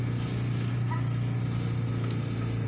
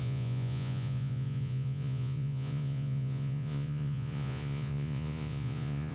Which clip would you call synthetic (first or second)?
second